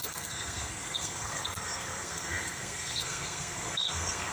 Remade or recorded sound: remade